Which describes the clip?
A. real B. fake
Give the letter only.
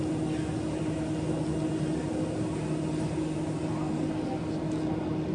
A